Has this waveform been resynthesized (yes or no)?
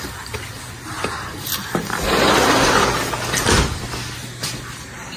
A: no